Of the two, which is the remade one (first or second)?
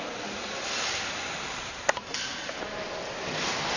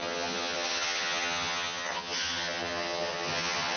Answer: second